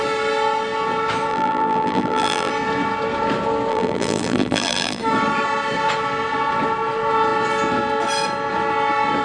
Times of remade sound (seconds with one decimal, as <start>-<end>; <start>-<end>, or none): 1.3-2.5; 3.7-5.0